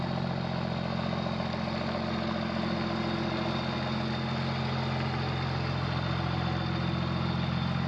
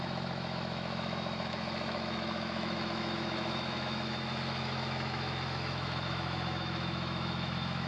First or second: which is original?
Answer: first